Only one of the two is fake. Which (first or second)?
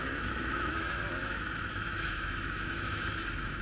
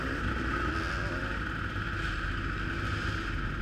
first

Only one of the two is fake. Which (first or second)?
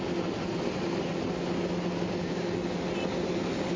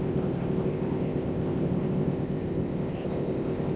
second